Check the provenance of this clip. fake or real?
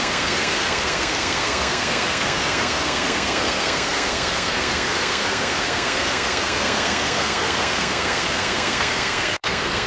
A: fake